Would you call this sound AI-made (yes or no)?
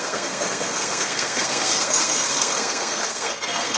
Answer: yes